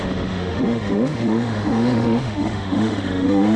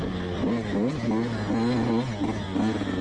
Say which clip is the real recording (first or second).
second